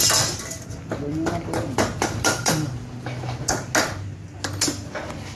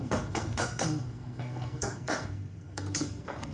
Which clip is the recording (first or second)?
first